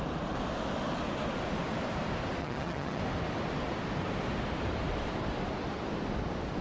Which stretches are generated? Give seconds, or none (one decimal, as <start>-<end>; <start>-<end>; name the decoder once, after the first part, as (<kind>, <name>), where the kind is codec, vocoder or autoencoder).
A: 2.4-3.0 (vocoder, HiFi-GAN)